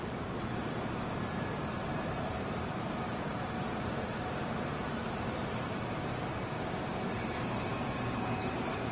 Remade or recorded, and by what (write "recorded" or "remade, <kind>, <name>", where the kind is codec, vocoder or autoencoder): remade, vocoder, BigVGAN v2